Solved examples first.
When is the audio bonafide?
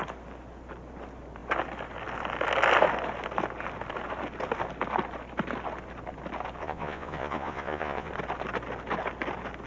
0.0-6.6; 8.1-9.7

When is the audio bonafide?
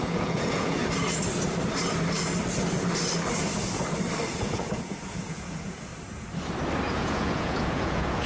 0.8-4.3; 5.9-6.9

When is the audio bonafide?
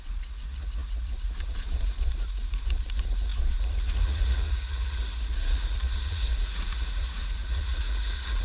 none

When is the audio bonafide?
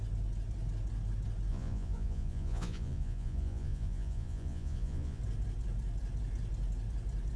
0.0-1.5; 5.2-7.4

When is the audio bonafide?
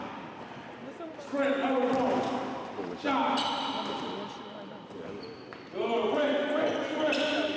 0.0-5.5; 6.2-7.6